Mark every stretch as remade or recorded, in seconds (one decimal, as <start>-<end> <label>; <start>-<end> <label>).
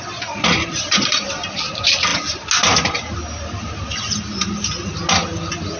0.0-0.7 recorded; 0.7-1.3 remade; 1.3-5.8 recorded